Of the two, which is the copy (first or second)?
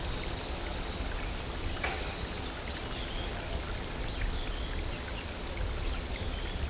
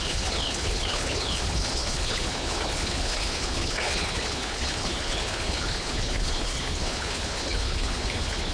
second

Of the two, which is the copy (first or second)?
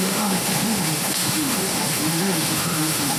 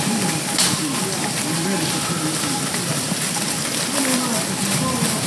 first